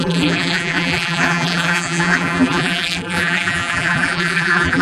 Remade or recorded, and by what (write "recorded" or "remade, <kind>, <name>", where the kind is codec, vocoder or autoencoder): remade, vocoder, BigVGAN v2